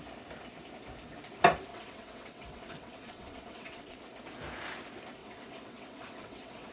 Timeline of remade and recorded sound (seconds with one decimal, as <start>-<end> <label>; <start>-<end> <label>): 0.0-1.7 recorded; 1.7-4.0 remade; 4.0-5.2 recorded; 5.2-6.7 remade